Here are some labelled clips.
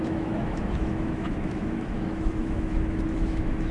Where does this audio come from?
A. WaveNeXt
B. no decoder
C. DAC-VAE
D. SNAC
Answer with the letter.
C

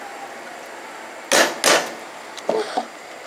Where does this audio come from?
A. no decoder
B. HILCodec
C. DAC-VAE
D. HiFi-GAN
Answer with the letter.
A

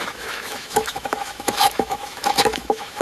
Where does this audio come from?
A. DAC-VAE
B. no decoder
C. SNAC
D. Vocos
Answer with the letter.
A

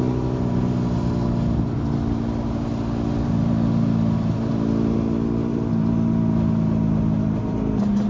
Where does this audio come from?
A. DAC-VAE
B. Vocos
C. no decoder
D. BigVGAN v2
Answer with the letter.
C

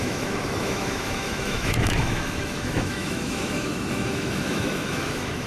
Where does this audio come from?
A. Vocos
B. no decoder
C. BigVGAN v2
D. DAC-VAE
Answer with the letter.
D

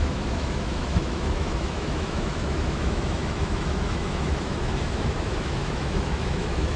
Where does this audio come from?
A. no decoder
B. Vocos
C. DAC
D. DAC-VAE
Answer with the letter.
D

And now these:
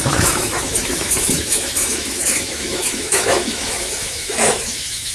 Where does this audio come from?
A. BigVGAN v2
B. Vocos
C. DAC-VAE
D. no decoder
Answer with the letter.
C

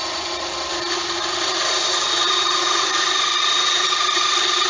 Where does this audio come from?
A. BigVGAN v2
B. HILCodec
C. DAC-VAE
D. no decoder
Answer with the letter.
D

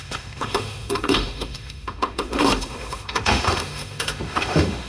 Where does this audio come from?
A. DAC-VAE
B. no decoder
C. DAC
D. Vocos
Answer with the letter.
A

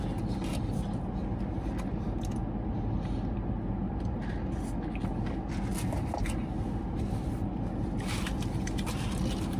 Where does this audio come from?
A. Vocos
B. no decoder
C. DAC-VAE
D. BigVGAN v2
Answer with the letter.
B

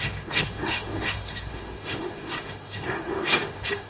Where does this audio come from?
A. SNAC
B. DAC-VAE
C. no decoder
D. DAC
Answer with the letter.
B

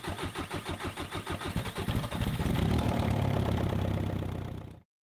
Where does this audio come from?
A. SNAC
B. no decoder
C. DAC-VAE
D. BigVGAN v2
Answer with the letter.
B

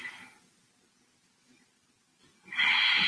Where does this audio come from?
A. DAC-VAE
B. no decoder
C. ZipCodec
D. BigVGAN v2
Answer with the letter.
B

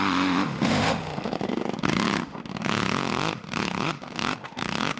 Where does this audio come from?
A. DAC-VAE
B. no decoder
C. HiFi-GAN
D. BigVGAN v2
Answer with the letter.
A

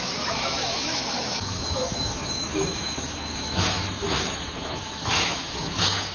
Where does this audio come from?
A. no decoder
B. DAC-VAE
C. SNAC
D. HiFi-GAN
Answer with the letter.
B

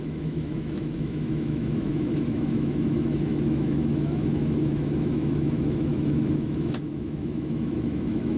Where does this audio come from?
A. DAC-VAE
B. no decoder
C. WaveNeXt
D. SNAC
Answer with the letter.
A